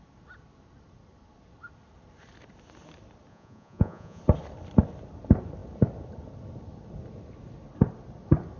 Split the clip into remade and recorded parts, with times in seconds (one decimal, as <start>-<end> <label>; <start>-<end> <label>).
0.0-3.3 recorded; 3.3-4.2 remade; 4.2-8.6 recorded

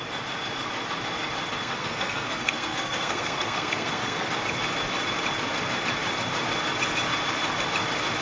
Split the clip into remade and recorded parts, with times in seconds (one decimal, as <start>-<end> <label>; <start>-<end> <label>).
0.0-1.6 recorded; 1.6-4.3 remade; 4.3-8.2 recorded

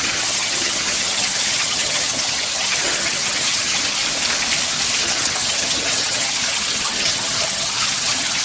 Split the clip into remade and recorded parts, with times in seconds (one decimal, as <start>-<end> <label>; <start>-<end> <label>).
0.0-4.0 remade; 4.0-5.0 recorded; 5.0-8.4 remade

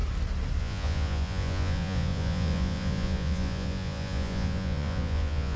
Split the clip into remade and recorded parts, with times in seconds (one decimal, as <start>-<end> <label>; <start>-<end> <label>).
0.0-0.6 recorded; 0.6-5.6 remade

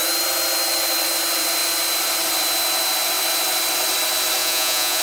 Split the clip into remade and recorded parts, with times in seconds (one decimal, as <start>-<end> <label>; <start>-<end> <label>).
0.0-4.4 recorded; 4.4-5.0 remade

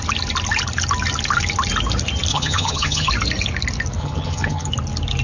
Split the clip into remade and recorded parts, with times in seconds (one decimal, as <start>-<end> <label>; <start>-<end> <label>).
0.0-2.3 recorded; 2.3-3.1 remade; 3.1-4.0 recorded; 4.0-4.7 remade; 4.7-5.2 recorded